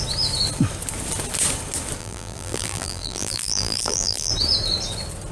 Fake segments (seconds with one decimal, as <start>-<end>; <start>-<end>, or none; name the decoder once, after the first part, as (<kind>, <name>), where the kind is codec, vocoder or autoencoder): 2.0-4.3 (vocoder, BigVGAN v2)

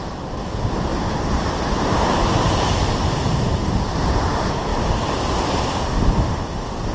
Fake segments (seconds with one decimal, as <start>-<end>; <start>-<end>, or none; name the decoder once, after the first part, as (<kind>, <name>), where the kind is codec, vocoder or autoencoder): 0.9-4.1 (vocoder, BigVGAN v2)

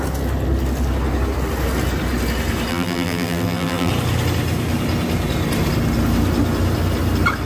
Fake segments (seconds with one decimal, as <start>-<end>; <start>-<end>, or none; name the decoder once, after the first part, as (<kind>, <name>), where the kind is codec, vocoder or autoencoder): 2.7-3.9 (vocoder, BigVGAN v2)

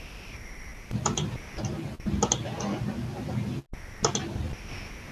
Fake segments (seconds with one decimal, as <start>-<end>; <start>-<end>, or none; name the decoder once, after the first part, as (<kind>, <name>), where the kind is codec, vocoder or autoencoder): none

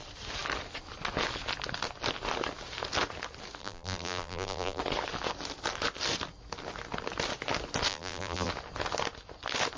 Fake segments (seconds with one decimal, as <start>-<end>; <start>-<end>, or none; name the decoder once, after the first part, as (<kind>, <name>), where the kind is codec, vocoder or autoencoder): 3.6-4.8 (vocoder, BigVGAN v2); 7.9-8.5

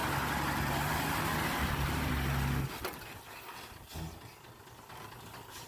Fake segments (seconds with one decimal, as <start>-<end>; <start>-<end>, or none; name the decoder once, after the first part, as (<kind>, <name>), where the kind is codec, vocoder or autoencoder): none

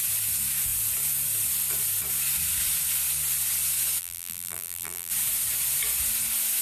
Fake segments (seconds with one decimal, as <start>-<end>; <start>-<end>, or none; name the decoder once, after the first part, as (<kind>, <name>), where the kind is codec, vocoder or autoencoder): 4.0-5.1 (vocoder, BigVGAN v2)

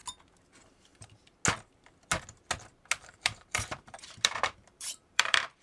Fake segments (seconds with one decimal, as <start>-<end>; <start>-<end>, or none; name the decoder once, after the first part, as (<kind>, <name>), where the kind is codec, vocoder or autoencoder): 0.7-1.2 (vocoder, BigVGAN v2); 3.0-5.6